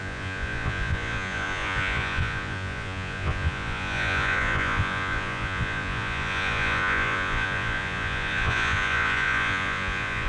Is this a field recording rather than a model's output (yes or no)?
no